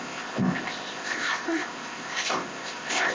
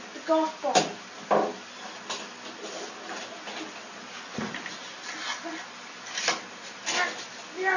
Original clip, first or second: second